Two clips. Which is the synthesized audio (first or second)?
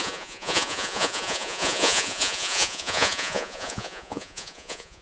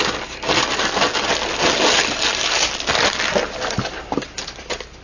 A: first